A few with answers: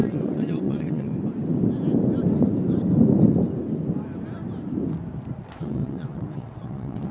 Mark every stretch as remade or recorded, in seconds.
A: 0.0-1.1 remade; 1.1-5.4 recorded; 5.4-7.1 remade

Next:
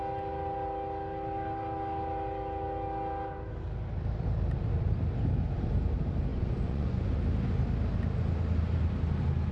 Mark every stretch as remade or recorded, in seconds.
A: 0.0-6.3 recorded; 6.3-7.2 remade; 7.2-9.5 recorded

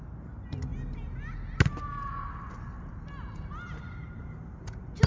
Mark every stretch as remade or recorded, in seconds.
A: 0.0-5.1 recorded

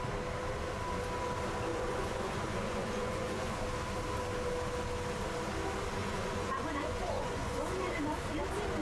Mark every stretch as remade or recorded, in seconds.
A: 0.0-1.7 recorded; 1.7-3.6 remade; 3.6-6.0 recorded; 6.0-8.0 remade; 8.0-8.8 recorded

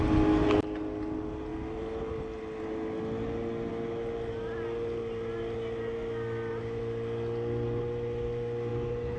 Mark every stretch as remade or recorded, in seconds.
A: 0.0-9.2 recorded

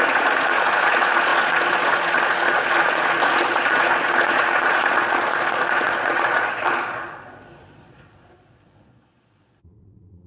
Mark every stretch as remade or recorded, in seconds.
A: 0.0-10.3 remade

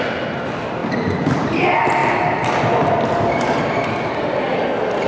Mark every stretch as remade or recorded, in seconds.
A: 0.0-5.1 recorded

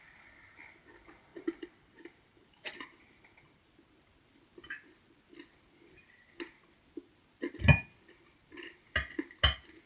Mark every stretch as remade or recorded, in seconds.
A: 0.0-1.3 recorded; 1.3-3.7 remade; 3.7-9.9 recorded